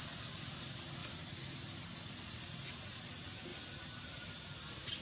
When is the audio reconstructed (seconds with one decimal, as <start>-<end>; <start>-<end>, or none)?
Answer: none